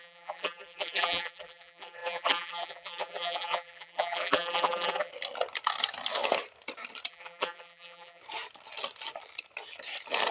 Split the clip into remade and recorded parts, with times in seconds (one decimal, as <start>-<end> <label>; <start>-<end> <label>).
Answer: 0.0-5.1 remade; 5.1-7.1 recorded; 7.1-8.2 remade; 8.2-10.3 recorded

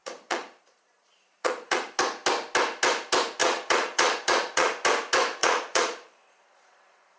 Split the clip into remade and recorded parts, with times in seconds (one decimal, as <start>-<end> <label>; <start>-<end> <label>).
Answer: 0.0-1.9 remade; 1.9-3.4 recorded; 3.4-4.7 remade; 4.7-5.4 recorded; 5.4-7.2 remade

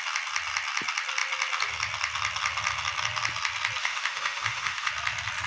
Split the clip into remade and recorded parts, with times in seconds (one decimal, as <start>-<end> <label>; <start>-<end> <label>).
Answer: 0.0-3.8 recorded; 3.8-4.9 remade; 4.9-5.5 recorded

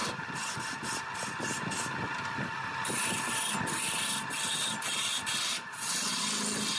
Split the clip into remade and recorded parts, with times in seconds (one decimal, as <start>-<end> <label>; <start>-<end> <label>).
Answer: 0.0-5.5 recorded; 5.5-6.2 remade; 6.2-6.8 recorded

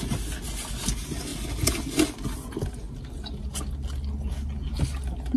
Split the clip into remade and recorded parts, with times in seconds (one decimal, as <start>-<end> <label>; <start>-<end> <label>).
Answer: 0.0-5.4 recorded

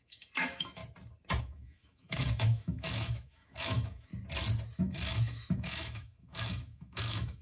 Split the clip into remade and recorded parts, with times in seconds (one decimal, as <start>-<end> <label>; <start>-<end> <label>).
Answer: 0.0-0.8 remade; 0.8-1.4 recorded; 1.4-4.1 remade; 4.1-4.8 recorded; 4.8-7.4 remade

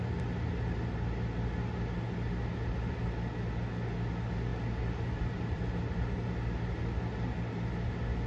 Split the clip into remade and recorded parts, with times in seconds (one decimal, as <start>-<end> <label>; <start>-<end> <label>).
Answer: 0.0-4.5 recorded; 4.5-5.7 remade; 5.7-8.3 recorded